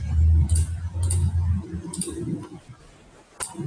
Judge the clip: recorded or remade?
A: recorded